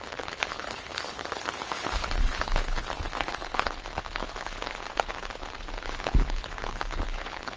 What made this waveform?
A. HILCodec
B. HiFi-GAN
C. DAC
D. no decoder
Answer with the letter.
A